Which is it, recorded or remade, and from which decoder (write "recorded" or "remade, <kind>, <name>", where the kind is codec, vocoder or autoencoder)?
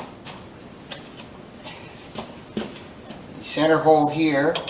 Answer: recorded